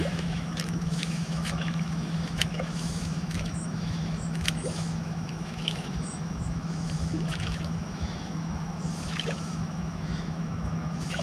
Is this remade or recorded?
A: remade